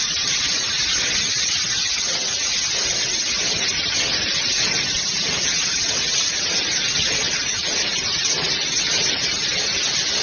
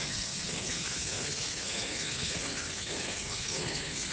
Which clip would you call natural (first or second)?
first